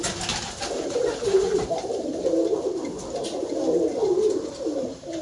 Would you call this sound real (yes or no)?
yes